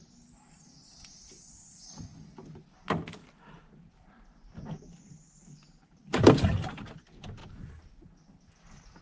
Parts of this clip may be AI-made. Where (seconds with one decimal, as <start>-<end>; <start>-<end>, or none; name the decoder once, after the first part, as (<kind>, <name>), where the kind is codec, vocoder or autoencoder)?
none